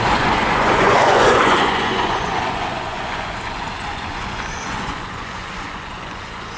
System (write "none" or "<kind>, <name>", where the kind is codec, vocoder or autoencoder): vocoder, Vocos